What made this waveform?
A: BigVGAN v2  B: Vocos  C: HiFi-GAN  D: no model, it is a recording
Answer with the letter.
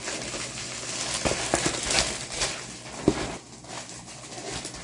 D